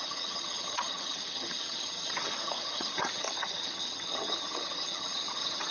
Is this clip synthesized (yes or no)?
yes